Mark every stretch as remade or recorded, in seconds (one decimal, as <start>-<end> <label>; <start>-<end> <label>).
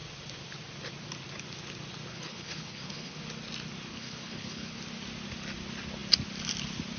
0.0-2.1 recorded; 2.1-3.2 remade; 3.2-3.9 recorded; 3.9-4.8 remade; 4.8-7.0 recorded